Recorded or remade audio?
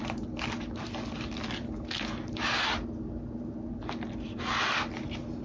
recorded